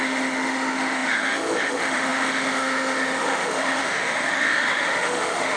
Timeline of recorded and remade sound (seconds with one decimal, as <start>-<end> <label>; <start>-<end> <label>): 0.0-5.6 remade